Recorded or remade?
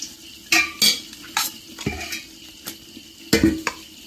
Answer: recorded